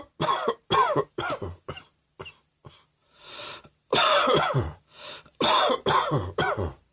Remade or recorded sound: remade